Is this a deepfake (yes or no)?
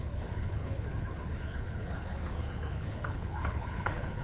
yes